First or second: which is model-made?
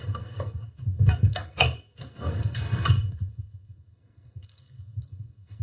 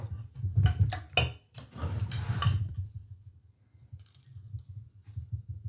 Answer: first